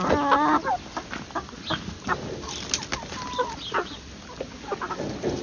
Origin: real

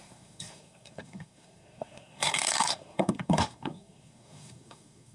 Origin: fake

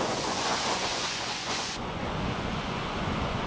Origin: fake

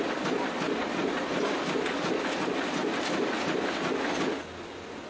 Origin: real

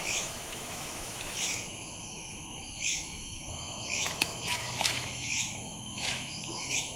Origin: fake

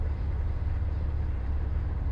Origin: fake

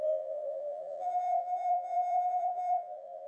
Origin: fake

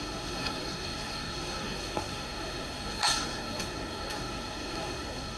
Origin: fake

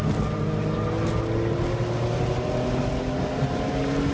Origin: real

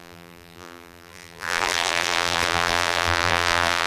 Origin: fake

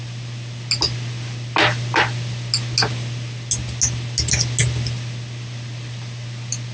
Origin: real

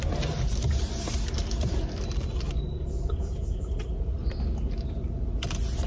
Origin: real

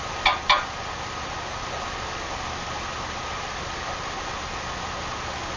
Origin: real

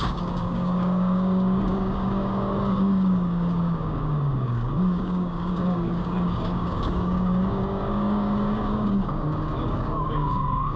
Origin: fake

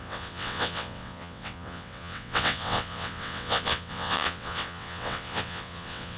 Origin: fake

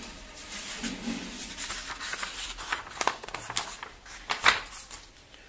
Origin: fake